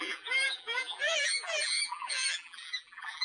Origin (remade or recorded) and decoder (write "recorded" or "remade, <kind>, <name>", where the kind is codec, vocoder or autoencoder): remade, vocoder, BigVGAN v2